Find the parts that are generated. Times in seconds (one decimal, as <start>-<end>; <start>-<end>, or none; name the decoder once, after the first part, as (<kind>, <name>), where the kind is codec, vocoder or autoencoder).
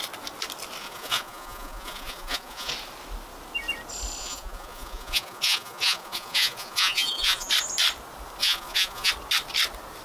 0.8-2.7 (vocoder, Vocos); 4.2-7.5; 8.4-9.1